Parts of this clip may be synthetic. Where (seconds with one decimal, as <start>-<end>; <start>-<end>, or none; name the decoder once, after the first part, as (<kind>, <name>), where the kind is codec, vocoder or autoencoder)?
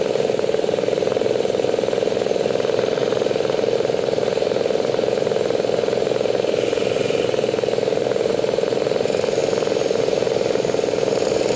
0.0-3.0 (vocoder, BigVGAN v2); 8.3-9.4; 10.0-11.6